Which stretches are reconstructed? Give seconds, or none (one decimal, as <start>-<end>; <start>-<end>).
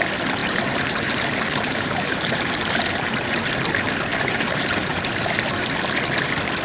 0.4-3.5; 4.1-5.0